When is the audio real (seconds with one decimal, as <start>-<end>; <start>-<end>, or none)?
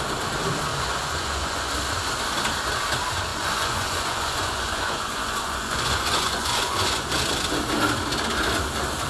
0.0-0.7; 1.7-3.3; 7.1-9.1